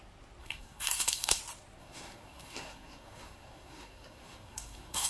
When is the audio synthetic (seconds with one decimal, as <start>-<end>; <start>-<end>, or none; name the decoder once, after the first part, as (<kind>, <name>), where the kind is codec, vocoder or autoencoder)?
0.4-1.4 (codec, SNAC); 1.8-5.1